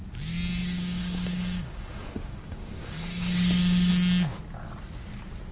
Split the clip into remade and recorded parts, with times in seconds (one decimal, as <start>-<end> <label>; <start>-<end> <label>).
0.0-0.6 recorded; 0.6-3.9 remade; 3.9-5.5 recorded